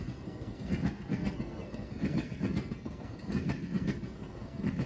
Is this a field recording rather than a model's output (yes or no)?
no